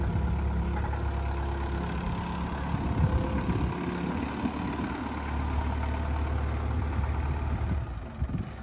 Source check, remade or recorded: recorded